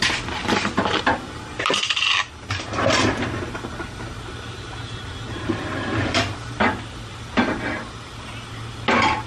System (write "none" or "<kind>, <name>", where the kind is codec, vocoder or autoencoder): none